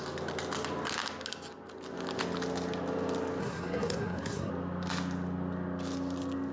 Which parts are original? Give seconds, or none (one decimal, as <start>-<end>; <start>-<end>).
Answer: 0.0-3.4; 4.5-6.5